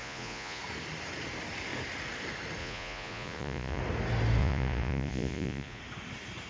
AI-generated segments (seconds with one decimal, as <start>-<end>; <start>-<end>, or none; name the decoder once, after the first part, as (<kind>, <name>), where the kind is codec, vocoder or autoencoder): 0.0-0.6 (vocoder, Vocos); 2.6-3.8; 4.4-5.8

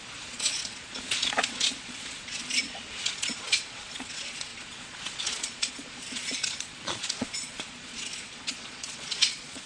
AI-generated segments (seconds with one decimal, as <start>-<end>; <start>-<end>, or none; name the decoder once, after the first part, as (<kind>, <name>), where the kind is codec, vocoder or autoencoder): 0.0-9.7 (vocoder, Vocos)

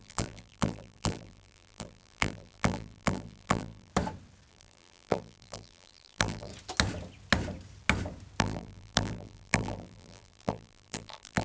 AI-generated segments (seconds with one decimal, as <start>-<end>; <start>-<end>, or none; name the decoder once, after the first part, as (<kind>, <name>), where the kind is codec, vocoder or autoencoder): 0.0-3.9 (vocoder, BigVGAN v2); 4.5-6.5; 8.4-11.4